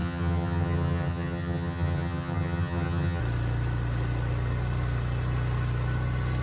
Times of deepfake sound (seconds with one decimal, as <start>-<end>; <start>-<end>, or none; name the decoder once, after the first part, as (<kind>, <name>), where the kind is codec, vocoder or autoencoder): 0.0-3.2 (vocoder, HiFi-GAN)